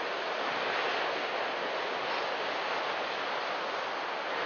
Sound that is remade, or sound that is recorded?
recorded